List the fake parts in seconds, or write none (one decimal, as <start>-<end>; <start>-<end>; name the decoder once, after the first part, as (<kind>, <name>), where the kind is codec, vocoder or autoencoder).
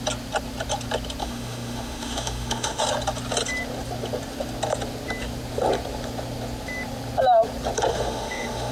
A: 1.2-2.8 (autoencoder, DAC-VAE); 7.9-8.7